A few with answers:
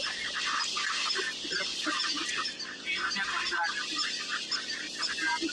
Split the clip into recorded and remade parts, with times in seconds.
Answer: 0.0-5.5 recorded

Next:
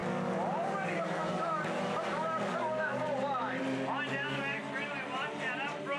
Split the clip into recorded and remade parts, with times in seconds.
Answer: 0.0-3.6 remade; 3.6-4.1 recorded; 4.1-4.6 remade; 4.6-6.0 recorded

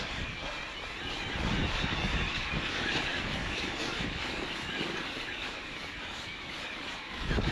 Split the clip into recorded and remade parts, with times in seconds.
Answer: 0.0-0.4 remade; 0.4-1.7 recorded; 1.7-7.5 remade

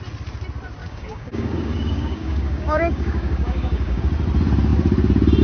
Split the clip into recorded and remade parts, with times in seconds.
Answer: 0.0-0.8 recorded; 0.8-4.0 remade; 4.0-5.4 recorded

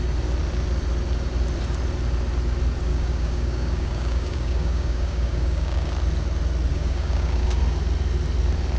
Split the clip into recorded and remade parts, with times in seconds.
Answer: 0.0-2.9 recorded; 2.9-5.9 remade; 5.9-6.7 recorded; 6.7-7.6 remade; 7.6-8.8 recorded

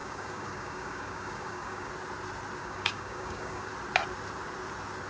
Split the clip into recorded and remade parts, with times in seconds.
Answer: 0.0-1.9 remade; 1.9-2.6 recorded; 2.6-3.7 remade; 3.7-5.1 recorded

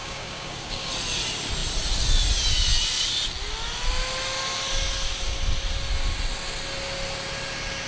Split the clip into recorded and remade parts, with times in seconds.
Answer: 0.0-0.9 remade; 0.9-7.9 recorded